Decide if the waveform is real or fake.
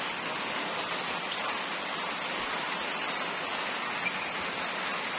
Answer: real